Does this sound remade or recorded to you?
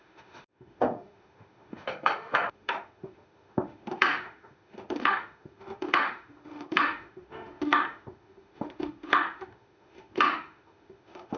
remade